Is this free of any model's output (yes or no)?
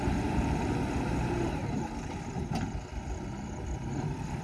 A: no